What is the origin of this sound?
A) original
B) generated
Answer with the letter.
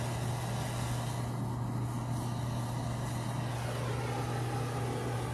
A